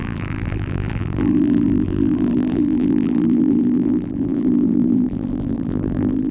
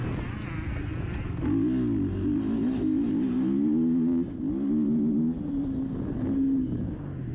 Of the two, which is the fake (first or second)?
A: first